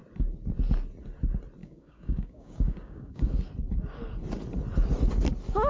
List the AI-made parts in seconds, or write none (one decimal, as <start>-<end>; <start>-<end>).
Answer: 1.6-3.4